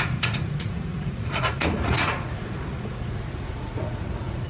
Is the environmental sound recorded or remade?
remade